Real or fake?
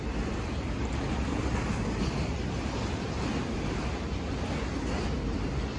real